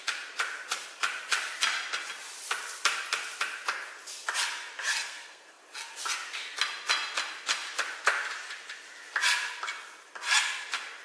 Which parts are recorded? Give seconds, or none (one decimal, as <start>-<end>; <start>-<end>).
0.0-5.0; 5.6-11.0